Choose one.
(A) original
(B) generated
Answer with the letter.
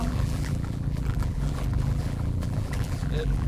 B